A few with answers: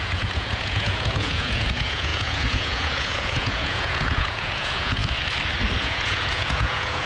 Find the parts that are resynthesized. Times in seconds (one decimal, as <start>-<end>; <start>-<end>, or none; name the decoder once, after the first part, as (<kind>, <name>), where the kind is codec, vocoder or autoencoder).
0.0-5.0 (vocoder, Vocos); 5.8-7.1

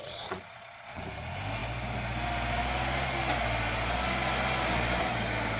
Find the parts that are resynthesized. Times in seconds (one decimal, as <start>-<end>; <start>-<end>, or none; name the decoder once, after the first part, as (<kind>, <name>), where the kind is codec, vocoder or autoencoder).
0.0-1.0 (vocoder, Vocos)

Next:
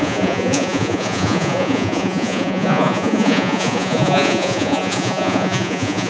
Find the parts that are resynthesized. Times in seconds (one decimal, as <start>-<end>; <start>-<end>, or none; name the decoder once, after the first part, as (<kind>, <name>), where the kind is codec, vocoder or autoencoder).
0.0-6.1 (vocoder, Vocos)

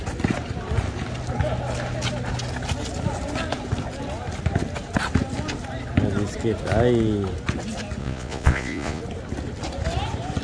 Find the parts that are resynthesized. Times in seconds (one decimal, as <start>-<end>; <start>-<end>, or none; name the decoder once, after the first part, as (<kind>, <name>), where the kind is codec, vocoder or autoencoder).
8.0-9.0 (vocoder, Vocos)

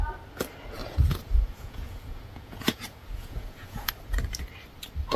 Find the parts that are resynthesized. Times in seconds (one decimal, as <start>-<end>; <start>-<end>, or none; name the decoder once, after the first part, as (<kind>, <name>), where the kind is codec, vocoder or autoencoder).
0.8-3.9 (vocoder, Vocos)